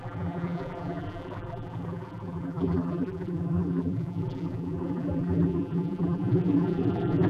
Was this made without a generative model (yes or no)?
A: no